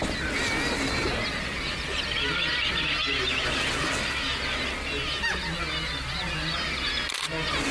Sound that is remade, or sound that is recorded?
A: recorded